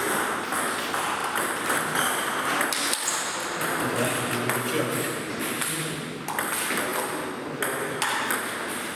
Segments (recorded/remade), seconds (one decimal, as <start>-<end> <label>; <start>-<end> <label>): 0.0-8.9 recorded